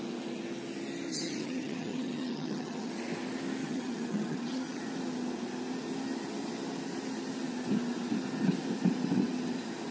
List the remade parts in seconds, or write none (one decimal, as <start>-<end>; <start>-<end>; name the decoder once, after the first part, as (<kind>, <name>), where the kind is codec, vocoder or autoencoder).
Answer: 1.1-2.9 (vocoder, HiFi-GAN); 3.6-4.8